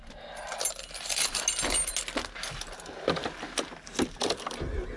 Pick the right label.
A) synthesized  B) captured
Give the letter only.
B